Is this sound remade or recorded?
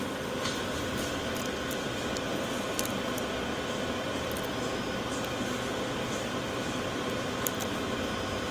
recorded